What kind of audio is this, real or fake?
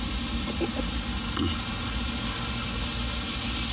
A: real